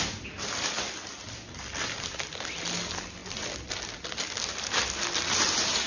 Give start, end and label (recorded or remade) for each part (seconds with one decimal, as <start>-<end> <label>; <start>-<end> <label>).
0.0-3.2 recorded; 3.2-3.7 remade; 3.7-5.9 recorded